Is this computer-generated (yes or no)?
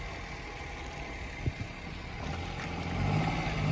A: no